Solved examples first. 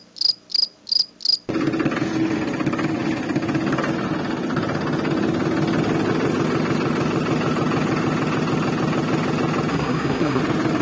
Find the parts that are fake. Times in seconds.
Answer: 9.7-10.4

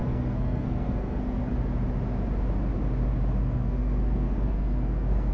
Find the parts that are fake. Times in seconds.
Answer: 0.0-1.5; 3.4-5.3